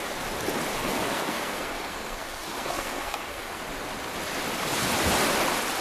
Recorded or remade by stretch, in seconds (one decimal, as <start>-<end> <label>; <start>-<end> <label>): 0.0-0.7 recorded; 0.7-3.6 remade; 3.6-5.8 recorded